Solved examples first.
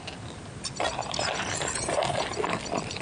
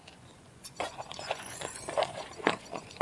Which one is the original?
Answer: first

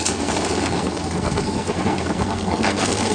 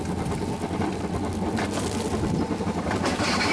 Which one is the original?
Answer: second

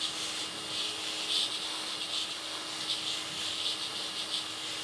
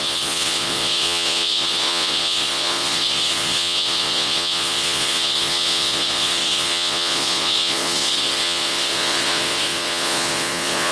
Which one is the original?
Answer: first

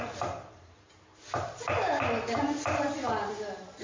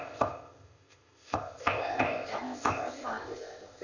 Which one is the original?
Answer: first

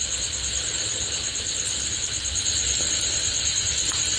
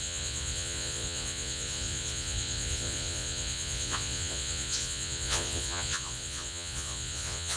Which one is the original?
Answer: first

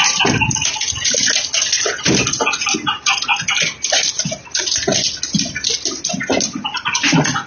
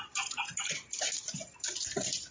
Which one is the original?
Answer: first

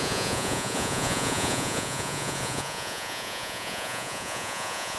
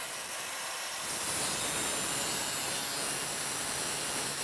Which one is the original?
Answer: second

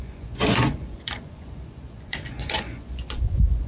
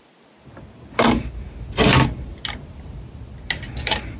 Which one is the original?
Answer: second